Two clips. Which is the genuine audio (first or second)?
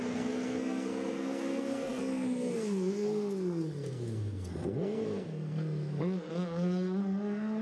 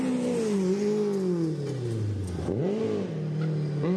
second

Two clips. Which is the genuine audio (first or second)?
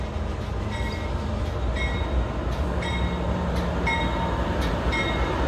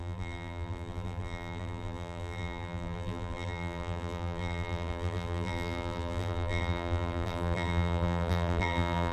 first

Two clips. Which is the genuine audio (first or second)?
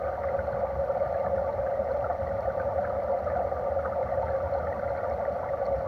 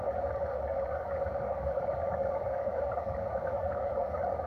first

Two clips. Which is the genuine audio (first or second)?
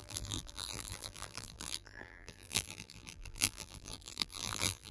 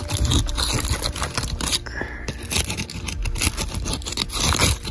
second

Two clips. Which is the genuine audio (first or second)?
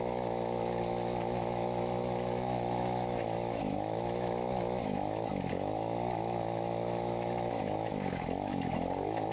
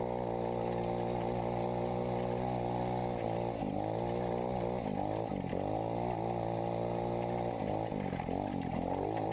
second